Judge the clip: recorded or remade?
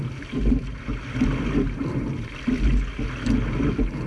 recorded